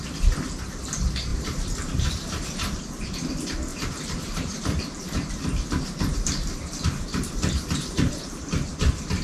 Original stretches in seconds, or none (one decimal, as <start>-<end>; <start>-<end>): 0.0-1.3; 2.8-3.7; 8.1-9.2